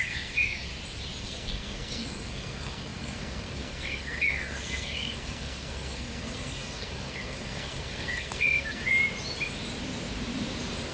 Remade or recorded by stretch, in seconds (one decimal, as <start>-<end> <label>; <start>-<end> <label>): 0.0-0.7 remade; 0.7-1.2 recorded; 1.2-8.8 remade; 8.8-10.9 recorded